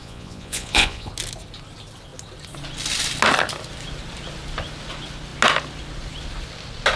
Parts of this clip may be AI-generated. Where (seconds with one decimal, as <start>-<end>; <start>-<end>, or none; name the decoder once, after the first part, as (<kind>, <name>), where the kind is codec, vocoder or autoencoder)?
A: 0.0-1.1 (vocoder, Vocos)